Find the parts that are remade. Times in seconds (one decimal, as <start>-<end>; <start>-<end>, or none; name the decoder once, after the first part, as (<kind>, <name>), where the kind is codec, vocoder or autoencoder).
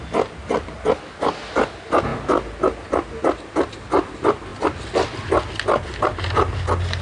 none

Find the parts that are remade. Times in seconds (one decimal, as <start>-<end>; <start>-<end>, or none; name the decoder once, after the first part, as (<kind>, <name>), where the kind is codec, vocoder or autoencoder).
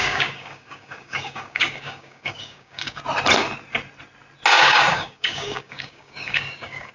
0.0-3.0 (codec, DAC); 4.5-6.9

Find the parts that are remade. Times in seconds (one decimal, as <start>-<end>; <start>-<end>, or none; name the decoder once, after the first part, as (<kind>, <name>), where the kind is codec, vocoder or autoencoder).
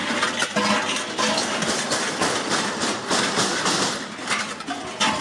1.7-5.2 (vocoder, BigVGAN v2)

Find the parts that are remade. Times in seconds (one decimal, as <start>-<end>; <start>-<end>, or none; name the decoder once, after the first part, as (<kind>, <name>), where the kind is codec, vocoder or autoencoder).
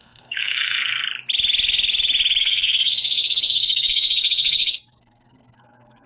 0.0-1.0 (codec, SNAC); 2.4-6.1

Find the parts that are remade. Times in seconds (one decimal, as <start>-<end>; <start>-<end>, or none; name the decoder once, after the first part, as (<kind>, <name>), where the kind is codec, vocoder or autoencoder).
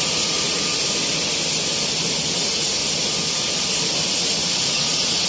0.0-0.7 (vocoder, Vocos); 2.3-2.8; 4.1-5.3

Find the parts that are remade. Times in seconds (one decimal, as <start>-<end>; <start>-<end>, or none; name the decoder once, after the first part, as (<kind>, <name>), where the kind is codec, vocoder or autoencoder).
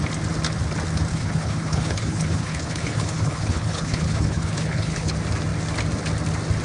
1.1-5.1 (codec, HILCodec)